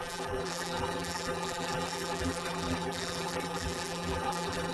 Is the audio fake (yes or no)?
yes